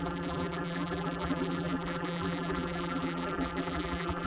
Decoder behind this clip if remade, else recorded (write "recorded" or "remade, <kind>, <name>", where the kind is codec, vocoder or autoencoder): remade, vocoder, BigVGAN v2